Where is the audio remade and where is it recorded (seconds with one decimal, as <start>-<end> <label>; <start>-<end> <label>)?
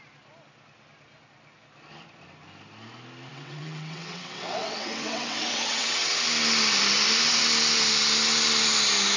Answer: 0.0-3.3 recorded; 3.3-6.1 remade; 6.1-9.2 recorded